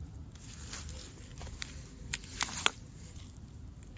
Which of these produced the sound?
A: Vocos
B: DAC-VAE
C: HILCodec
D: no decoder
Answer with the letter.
D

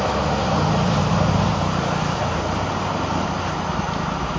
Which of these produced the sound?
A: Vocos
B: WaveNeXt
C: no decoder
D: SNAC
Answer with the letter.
C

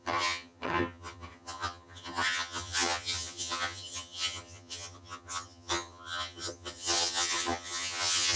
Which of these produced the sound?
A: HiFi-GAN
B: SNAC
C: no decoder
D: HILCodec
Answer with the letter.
A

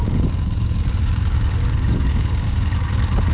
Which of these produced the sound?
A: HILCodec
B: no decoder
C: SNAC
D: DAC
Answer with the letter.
D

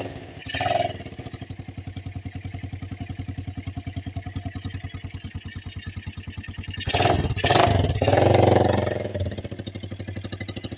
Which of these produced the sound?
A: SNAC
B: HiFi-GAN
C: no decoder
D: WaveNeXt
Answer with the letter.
C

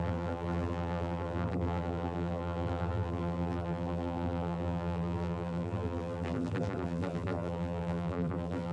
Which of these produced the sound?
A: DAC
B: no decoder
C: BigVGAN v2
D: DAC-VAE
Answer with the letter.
C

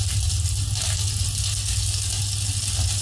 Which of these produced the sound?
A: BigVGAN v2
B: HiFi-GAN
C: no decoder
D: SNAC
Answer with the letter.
C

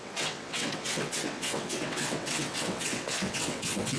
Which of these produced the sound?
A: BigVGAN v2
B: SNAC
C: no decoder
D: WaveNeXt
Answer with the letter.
D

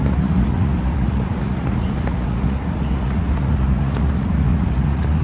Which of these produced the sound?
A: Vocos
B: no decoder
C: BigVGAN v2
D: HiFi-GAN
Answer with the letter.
A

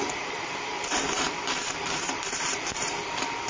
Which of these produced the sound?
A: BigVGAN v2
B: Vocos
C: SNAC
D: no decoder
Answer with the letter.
A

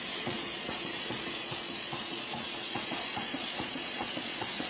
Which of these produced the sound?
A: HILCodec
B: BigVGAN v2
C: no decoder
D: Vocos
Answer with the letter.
D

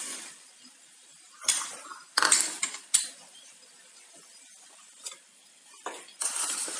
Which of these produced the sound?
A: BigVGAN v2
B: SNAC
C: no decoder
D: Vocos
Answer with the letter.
A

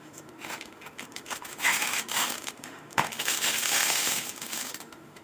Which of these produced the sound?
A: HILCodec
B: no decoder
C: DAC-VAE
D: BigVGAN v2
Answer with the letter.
C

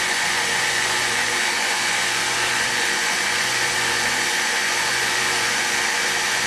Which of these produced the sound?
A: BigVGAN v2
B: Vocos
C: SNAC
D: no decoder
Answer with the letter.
B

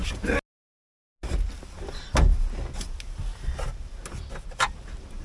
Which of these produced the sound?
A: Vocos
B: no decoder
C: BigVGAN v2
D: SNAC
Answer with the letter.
B